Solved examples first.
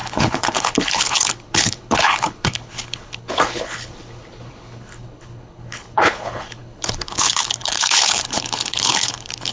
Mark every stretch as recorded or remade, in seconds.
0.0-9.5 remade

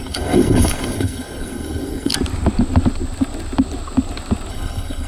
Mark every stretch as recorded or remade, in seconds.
0.0-2.1 remade; 2.1-4.5 recorded; 4.5-5.1 remade

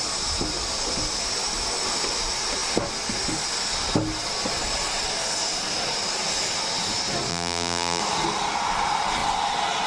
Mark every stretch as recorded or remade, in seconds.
0.0-7.3 recorded; 7.3-8.0 remade; 8.0-9.9 recorded

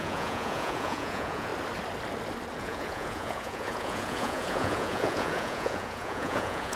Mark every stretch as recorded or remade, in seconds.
0.0-1.5 remade; 1.5-2.6 recorded; 2.6-6.8 remade